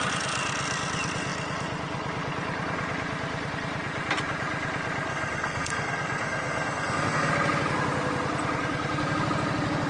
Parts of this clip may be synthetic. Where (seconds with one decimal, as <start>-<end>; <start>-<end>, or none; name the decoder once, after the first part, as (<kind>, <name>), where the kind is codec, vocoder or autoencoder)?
5.1-7.3 (codec, SNAC)